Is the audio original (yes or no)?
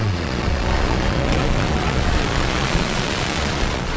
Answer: no